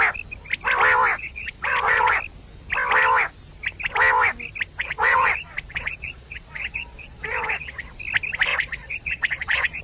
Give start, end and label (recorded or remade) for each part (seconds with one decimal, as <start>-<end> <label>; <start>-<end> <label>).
0.0-1.2 recorded; 1.2-2.2 remade; 2.2-4.8 recorded; 4.8-8.0 remade; 8.0-8.5 recorded; 8.5-9.8 remade

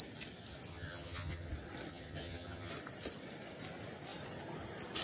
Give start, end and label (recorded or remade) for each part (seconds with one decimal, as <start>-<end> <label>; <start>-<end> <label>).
0.0-0.7 recorded; 0.7-1.5 remade; 1.5-1.9 recorded; 1.9-2.7 remade; 2.7-5.0 recorded

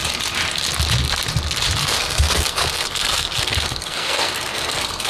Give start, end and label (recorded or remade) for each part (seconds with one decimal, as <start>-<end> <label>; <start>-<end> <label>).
0.0-1.8 recorded; 1.8-5.1 remade

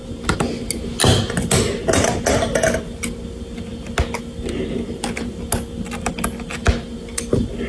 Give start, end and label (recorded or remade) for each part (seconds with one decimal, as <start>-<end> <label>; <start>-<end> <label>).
0.0-7.7 recorded

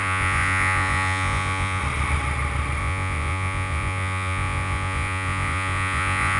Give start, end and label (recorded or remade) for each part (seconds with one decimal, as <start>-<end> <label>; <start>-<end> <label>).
0.0-1.8 remade; 1.8-2.8 recorded; 2.8-6.4 remade